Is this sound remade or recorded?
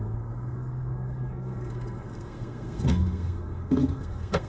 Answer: remade